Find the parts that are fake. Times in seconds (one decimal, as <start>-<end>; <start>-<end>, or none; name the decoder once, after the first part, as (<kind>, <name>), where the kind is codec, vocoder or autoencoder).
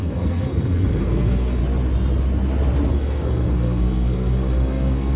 0.0-1.6 (codec, SNAC); 2.9-5.2